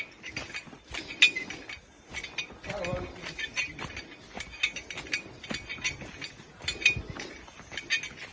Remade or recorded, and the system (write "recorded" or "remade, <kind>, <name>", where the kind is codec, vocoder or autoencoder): recorded